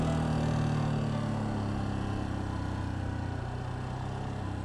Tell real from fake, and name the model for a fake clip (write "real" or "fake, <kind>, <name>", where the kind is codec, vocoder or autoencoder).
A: real